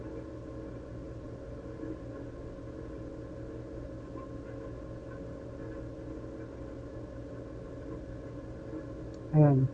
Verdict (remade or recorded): recorded